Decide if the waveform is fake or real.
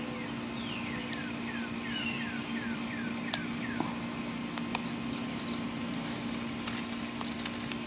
real